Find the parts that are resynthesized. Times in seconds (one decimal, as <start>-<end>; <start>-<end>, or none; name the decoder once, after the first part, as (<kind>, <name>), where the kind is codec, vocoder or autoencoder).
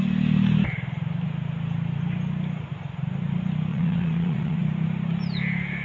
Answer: 3.7-4.6 (vocoder, Vocos)